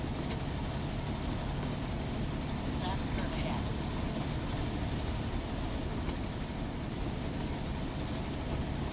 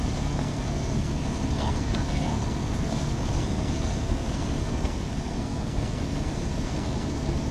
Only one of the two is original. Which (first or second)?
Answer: first